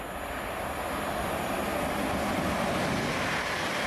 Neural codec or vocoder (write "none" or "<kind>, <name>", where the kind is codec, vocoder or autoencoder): none